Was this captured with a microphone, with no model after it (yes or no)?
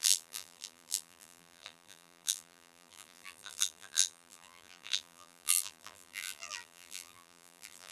no